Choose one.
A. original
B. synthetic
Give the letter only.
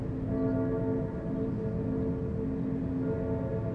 A